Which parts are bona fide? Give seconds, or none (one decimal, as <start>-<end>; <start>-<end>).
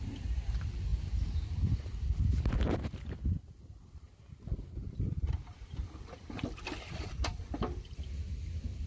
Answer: 0.0-8.9